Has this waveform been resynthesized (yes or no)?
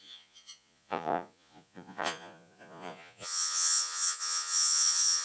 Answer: yes